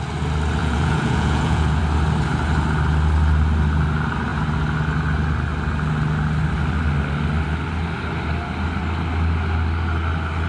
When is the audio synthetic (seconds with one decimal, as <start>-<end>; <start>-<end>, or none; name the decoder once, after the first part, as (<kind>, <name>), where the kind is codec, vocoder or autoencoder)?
0.6-1.8 (vocoder, Vocos)